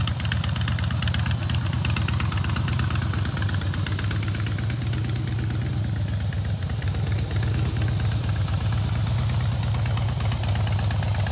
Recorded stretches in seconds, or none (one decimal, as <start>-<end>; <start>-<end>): 0.0-11.3